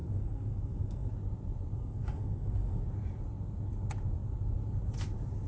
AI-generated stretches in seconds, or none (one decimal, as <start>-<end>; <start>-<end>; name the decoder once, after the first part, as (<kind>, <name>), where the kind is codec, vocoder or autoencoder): 0.0-1.1 (codec, SNAC); 1.8-2.8